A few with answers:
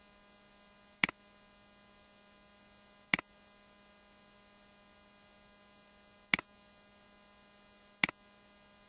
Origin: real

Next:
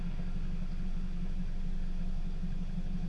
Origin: real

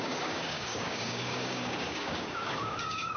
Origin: fake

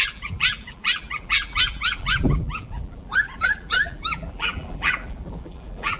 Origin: fake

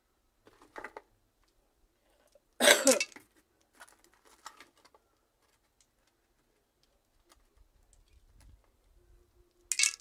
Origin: real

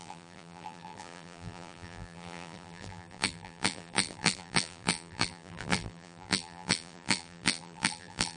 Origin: fake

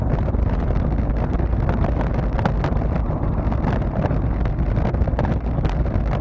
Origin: real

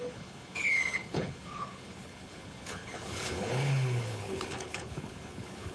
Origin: fake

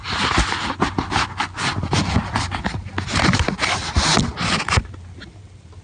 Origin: real